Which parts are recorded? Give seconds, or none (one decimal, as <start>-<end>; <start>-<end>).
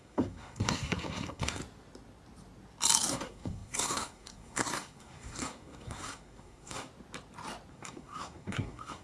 1.6-3.1; 6.9-7.7